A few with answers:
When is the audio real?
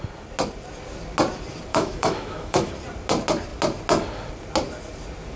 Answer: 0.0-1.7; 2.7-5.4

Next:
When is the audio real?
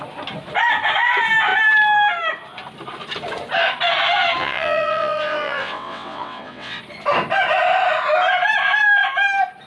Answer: 0.0-4.4; 6.8-9.7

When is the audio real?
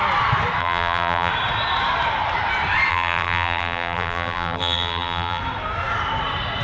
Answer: 0.0-0.6; 1.3-2.9; 5.4-6.6